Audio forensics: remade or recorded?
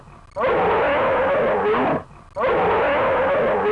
recorded